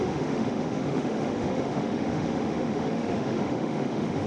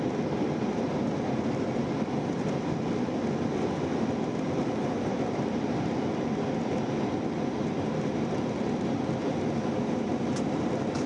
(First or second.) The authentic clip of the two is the second